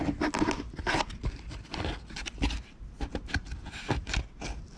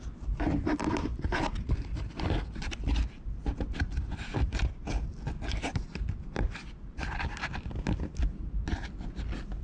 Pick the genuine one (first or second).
first